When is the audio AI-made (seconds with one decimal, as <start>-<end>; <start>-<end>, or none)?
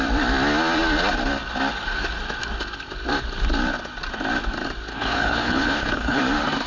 4.9-6.2